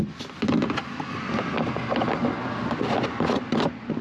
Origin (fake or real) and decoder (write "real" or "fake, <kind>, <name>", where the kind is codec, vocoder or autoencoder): real